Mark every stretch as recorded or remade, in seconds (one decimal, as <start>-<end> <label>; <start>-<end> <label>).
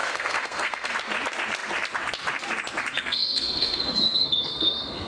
0.0-0.9 remade; 0.9-2.9 recorded; 2.9-5.1 remade